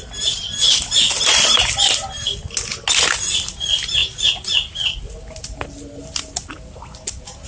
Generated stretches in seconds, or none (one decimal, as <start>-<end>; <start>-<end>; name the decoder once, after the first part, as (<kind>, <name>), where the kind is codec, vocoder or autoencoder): none